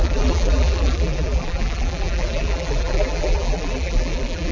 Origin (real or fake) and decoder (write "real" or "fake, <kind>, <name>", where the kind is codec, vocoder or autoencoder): fake, vocoder, BigVGAN v2